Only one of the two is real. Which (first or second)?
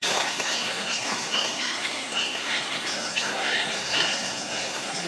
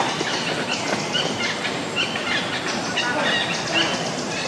second